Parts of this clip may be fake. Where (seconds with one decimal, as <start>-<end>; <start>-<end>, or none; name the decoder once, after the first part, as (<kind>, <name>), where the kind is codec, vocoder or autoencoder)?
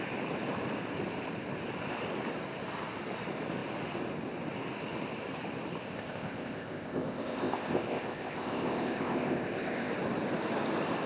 5.8-9.9 (codec, ZipCodec)